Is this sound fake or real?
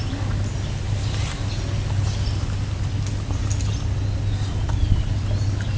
real